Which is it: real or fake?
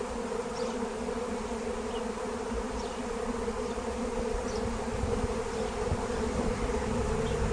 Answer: real